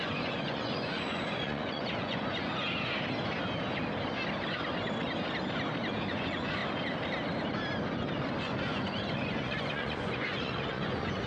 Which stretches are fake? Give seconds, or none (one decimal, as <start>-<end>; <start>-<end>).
0.0-2.5; 5.9-6.6; 8.4-11.3